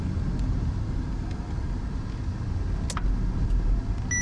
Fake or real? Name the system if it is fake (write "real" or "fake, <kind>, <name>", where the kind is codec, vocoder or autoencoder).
real